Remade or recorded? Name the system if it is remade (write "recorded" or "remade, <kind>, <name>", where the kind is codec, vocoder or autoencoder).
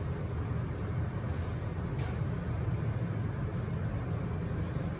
recorded